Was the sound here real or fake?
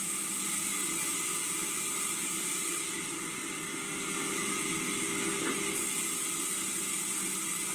real